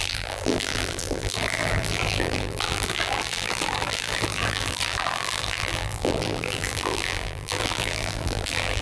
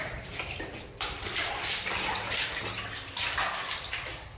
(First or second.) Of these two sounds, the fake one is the first